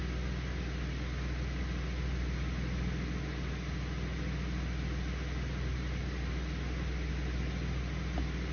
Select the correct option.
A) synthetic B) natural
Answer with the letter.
B